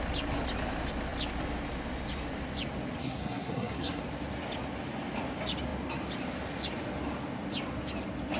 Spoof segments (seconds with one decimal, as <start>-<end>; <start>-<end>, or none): 3.0-4.0